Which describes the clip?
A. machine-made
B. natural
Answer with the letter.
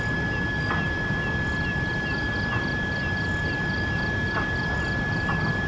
B